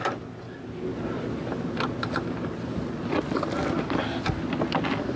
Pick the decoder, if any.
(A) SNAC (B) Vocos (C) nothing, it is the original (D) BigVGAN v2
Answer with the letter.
C